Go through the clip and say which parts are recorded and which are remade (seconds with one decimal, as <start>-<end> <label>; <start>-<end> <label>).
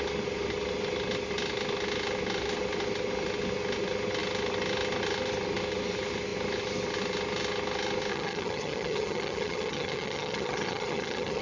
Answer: 0.0-8.1 recorded; 8.1-11.4 remade